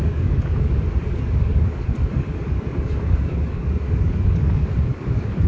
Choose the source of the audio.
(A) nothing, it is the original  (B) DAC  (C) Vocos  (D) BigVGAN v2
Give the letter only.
B